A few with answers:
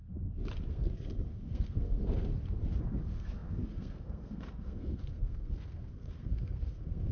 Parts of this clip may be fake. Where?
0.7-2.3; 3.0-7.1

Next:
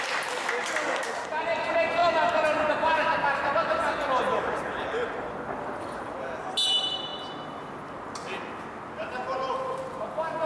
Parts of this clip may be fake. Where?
none

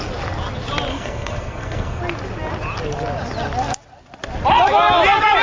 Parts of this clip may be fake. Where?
0.9-2.0

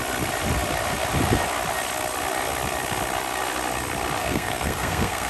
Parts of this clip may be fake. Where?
4.2-5.3

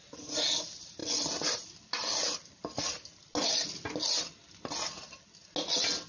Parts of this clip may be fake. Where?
none

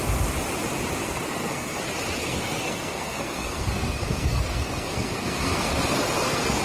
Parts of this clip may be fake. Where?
1.0-1.8; 2.2-6.6

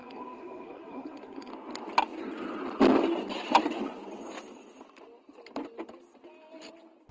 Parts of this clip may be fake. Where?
0.0-1.5

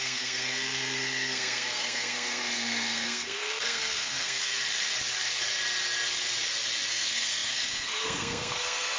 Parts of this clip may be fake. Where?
0.0-4.5; 6.9-9.0